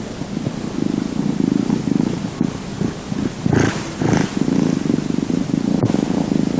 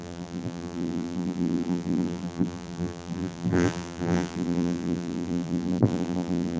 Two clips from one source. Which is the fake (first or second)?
second